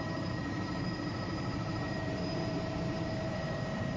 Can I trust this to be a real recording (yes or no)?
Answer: no